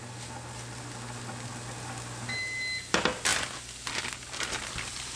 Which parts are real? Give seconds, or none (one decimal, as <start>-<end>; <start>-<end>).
0.0-5.2